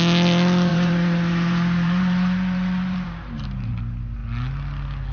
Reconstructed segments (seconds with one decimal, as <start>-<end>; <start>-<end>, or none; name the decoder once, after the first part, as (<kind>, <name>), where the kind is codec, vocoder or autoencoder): 0.7-3.8 (vocoder, BigVGAN v2)